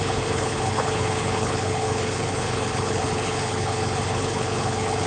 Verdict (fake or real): fake